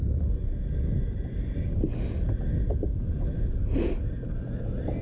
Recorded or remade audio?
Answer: recorded